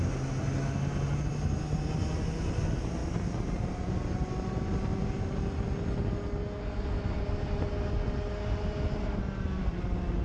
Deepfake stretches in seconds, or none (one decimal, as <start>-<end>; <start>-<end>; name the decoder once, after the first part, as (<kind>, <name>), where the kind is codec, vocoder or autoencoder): none